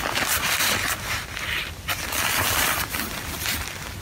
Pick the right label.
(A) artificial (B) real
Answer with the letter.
A